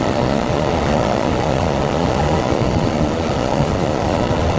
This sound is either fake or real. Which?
fake